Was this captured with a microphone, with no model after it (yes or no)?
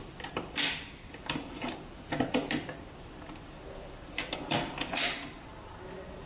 no